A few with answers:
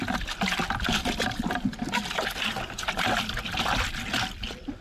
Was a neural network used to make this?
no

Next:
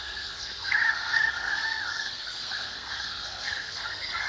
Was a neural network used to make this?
yes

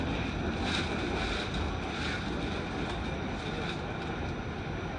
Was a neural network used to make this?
no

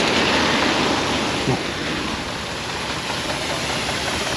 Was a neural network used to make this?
no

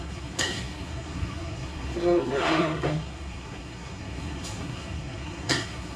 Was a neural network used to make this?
yes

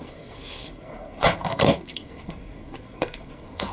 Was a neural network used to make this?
yes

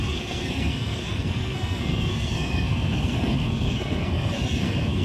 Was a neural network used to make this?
yes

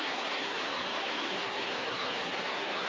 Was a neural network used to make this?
yes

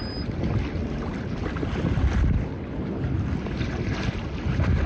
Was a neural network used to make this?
no